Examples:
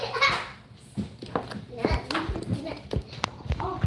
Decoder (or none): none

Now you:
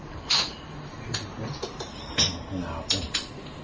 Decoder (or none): none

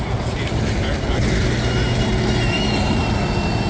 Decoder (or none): none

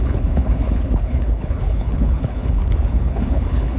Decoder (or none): codec, HILCodec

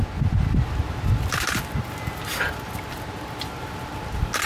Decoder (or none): none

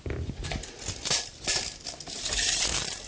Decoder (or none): none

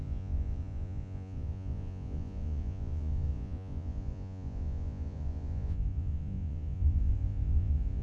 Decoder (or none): vocoder, Vocos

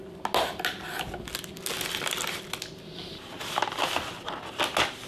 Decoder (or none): none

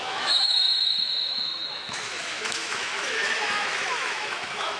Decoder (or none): autoencoder, DAC-VAE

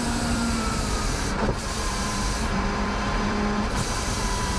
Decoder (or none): vocoder, BigVGAN v2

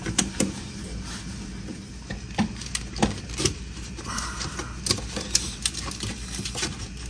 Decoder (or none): none